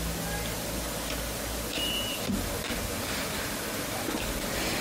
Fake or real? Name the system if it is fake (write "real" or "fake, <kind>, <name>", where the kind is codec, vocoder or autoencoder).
fake, vocoder, BigVGAN v2